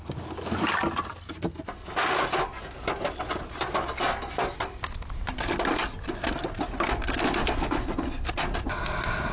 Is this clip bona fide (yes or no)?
yes